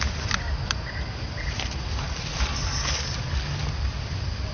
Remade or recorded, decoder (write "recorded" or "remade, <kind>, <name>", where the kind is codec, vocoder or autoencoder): recorded